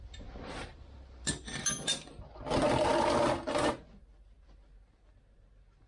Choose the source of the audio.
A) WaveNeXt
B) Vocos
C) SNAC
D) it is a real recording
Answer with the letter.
D